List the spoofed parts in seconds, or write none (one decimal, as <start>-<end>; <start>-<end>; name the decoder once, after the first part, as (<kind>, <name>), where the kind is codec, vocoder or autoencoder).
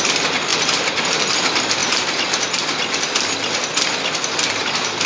none